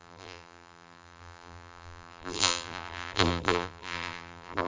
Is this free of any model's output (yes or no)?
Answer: no